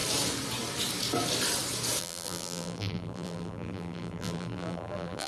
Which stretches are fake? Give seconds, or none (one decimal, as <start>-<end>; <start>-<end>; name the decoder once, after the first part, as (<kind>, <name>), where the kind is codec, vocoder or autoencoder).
2.0-5.3 (vocoder, BigVGAN v2)